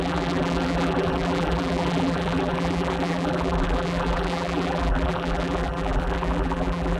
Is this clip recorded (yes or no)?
no